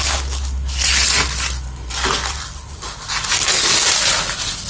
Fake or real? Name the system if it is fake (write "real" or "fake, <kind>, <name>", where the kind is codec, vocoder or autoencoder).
real